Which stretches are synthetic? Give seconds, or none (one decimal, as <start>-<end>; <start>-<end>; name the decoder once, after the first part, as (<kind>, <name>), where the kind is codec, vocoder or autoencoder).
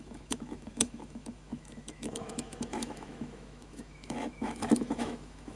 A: 0.0-5.6 (autoencoder, DAC-VAE)